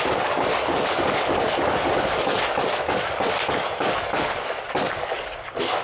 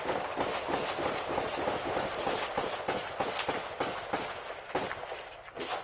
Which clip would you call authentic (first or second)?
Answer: second